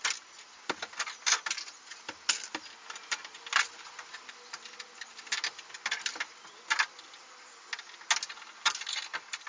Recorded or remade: recorded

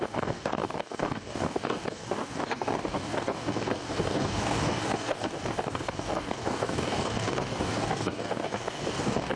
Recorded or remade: remade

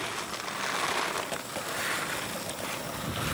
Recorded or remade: remade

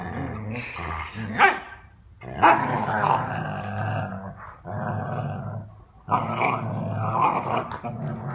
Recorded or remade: recorded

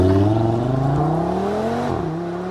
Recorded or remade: recorded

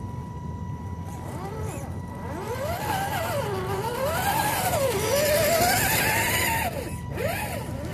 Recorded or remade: remade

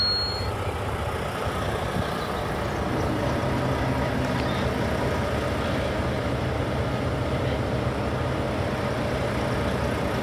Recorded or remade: recorded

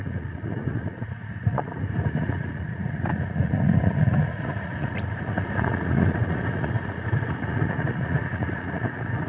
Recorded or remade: remade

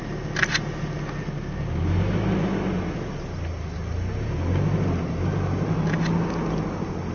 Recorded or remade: recorded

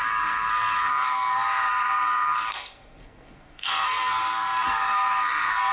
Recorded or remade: remade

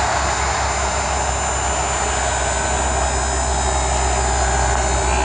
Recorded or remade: recorded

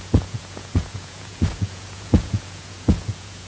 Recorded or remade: remade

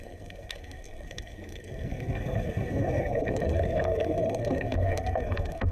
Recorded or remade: remade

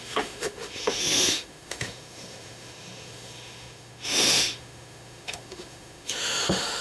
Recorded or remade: remade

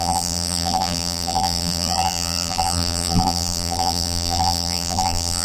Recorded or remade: remade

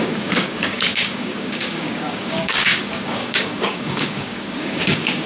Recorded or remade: remade